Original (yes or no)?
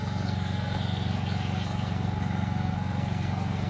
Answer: no